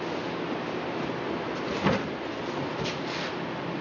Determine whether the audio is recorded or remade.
recorded